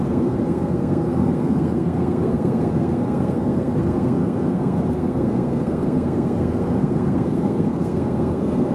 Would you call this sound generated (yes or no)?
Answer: yes